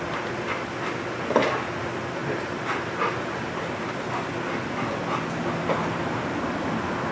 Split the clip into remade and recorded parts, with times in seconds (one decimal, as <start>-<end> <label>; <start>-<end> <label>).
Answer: 0.0-2.2 recorded; 2.2-4.1 remade; 4.1-7.1 recorded